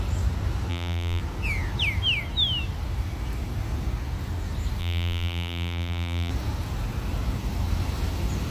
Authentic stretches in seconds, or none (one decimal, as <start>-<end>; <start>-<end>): 0.0-0.7; 1.2-4.8; 6.3-8.5